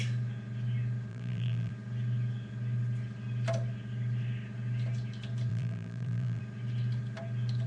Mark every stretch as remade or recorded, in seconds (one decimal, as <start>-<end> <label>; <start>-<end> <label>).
0.0-1.1 recorded; 1.1-1.7 remade; 1.7-5.5 recorded; 5.5-6.4 remade; 6.4-7.7 recorded